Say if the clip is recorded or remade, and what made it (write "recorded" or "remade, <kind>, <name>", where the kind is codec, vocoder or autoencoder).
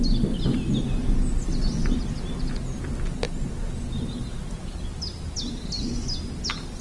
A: recorded